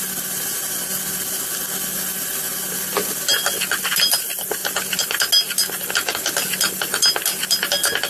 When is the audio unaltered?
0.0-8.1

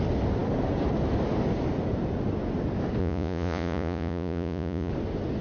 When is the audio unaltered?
0.0-3.0; 4.9-5.4

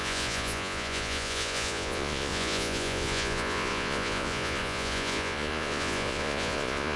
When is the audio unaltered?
none